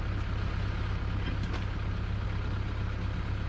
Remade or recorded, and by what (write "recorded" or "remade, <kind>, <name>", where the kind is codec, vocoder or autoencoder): recorded